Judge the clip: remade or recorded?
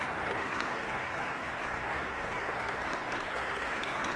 remade